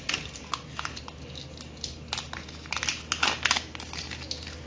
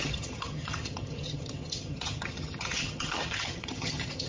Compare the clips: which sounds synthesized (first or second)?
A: second